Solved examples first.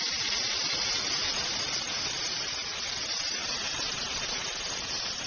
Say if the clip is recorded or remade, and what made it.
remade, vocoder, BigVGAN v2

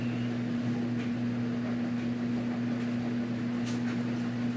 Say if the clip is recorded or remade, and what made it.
recorded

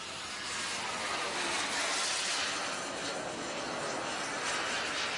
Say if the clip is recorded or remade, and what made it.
recorded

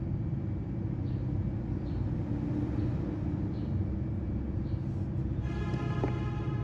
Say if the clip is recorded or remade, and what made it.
recorded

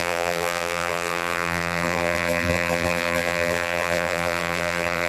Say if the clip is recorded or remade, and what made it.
remade, vocoder, BigVGAN v2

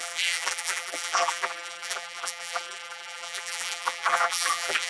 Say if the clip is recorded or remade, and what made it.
remade, vocoder, BigVGAN v2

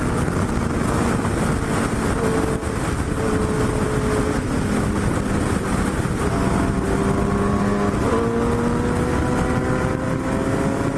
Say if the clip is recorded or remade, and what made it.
recorded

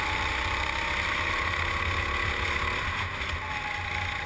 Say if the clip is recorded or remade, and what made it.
recorded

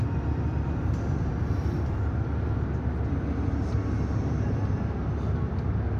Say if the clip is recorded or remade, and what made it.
recorded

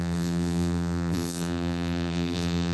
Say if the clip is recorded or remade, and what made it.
remade, vocoder, BigVGAN v2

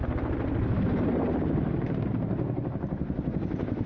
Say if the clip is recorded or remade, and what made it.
recorded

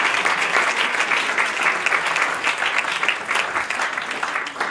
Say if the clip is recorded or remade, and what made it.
recorded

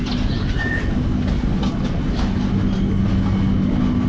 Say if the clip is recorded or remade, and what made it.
recorded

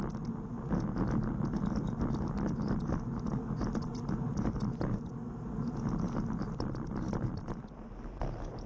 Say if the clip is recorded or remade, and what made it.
recorded